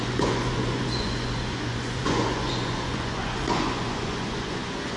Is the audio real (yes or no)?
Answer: no